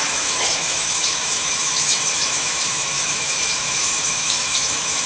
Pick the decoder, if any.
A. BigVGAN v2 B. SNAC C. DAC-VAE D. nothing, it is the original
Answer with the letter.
C